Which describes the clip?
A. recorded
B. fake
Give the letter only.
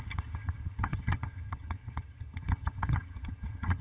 B